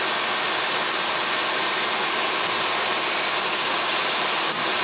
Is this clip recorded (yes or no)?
yes